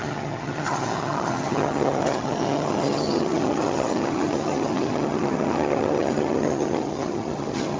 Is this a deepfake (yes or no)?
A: yes